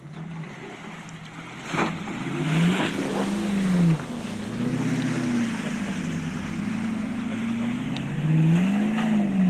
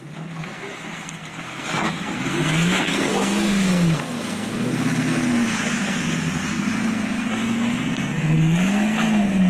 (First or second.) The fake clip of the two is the second